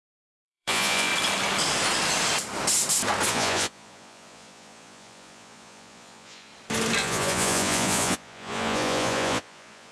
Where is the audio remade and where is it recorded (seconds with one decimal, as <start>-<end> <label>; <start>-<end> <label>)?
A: 0.0-1.1 remade; 1.1-3.3 recorded; 3.3-6.5 remade; 6.5-7.0 recorded; 7.0-9.9 remade